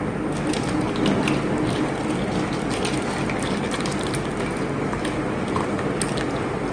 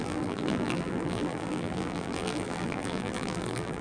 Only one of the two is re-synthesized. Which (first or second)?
second